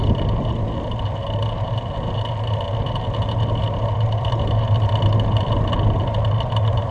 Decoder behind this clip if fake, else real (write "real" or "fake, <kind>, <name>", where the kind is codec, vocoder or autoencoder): real